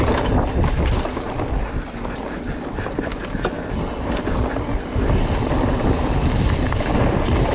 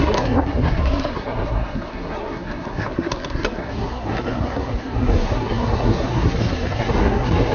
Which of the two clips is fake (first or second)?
second